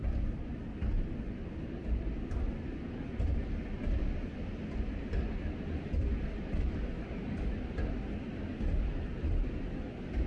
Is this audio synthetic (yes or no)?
no